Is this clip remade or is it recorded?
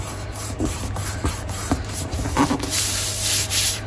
remade